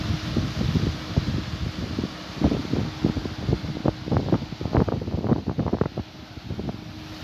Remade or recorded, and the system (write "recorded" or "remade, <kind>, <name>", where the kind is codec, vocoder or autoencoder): recorded